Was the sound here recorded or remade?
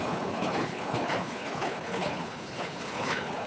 remade